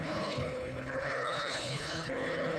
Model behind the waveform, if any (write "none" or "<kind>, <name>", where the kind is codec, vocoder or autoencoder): codec, HILCodec